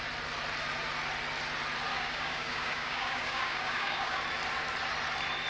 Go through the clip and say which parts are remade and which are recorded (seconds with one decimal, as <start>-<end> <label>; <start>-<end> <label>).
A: 0.0-1.9 recorded; 1.9-4.2 remade; 4.2-5.5 recorded

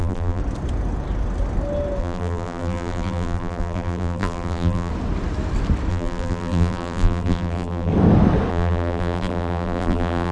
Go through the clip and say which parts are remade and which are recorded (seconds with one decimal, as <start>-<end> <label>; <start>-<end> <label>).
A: 0.0-0.4 remade; 0.4-2.0 recorded; 2.0-4.9 remade; 4.9-5.9 recorded; 5.9-7.9 remade; 7.9-8.5 recorded; 8.5-10.3 remade

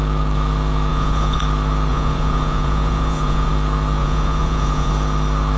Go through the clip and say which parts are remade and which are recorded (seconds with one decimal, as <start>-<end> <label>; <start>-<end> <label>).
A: 0.0-0.9 recorded; 0.9-1.4 remade; 1.4-1.9 recorded; 1.9-3.5 remade; 3.5-4.0 recorded; 4.0-4.9 remade; 4.9-5.6 recorded

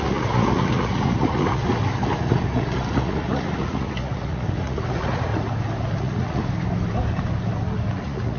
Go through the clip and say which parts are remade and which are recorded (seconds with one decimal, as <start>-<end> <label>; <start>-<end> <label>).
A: 0.0-5.3 remade; 5.3-6.0 recorded; 6.0-6.4 remade; 6.4-7.9 recorded; 7.9-8.4 remade

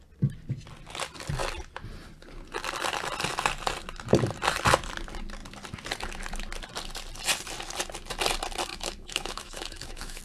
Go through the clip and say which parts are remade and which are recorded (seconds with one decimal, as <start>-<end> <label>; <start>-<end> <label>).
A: 0.0-8.7 recorded; 8.7-10.2 remade